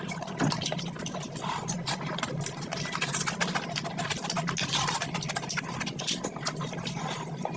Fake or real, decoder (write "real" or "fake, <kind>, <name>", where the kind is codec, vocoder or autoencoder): real